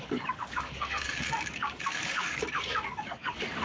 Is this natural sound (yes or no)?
no